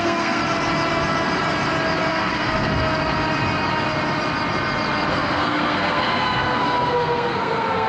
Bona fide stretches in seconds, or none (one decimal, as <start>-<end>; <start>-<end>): 0.4-2.1; 2.7-5.1